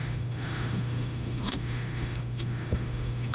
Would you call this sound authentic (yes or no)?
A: no